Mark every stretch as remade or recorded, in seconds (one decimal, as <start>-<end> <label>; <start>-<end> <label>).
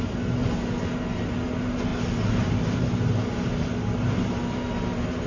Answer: 0.0-5.3 recorded